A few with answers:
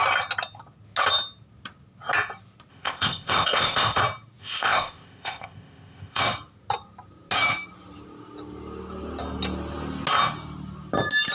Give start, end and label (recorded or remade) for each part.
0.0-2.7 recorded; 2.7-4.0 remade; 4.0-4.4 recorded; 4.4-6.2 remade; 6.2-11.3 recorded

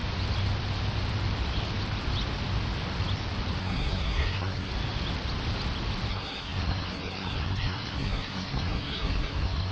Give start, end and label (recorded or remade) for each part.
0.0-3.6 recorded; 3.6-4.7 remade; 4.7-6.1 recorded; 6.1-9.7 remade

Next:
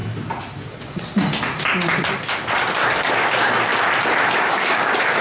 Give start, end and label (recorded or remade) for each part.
0.0-3.1 recorded; 3.1-3.7 remade; 3.7-4.3 recorded; 4.3-5.2 remade